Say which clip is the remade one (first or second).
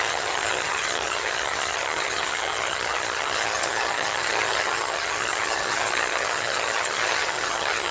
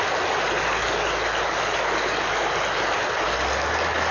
first